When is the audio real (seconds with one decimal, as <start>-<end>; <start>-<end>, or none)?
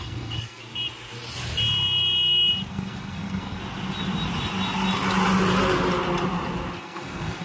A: 0.6-2.7; 3.6-6.8